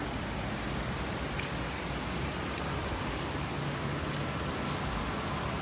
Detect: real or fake real